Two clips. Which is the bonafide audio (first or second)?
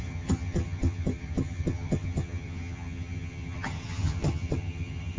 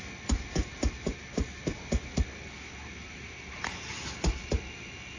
second